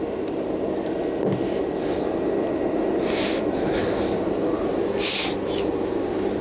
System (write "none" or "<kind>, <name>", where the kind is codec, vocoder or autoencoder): none